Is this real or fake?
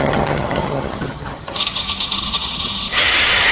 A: fake